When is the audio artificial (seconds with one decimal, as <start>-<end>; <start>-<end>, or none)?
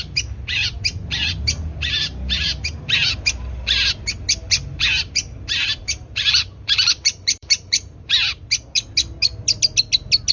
5.8-8.1